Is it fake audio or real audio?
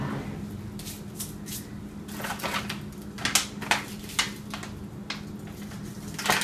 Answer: real